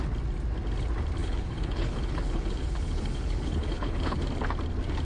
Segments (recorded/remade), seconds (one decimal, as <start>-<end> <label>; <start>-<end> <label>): 0.0-1.2 recorded; 1.2-4.2 remade; 4.2-5.0 recorded